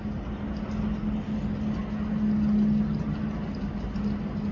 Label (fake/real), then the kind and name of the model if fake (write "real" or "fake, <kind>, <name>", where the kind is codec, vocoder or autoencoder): real